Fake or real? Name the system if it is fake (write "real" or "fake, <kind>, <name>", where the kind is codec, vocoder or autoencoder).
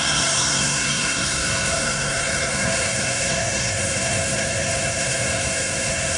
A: fake, codec, SNAC